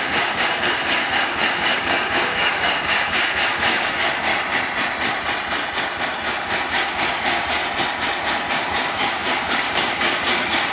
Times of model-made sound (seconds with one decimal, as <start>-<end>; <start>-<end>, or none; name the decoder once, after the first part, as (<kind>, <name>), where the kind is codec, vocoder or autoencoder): 0.0-4.3 (codec, DAC); 6.7-7.6; 8.5-10.7